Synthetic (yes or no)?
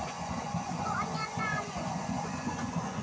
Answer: yes